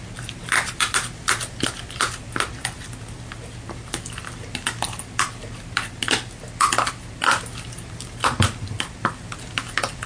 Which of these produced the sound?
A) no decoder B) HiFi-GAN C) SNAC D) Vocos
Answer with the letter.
A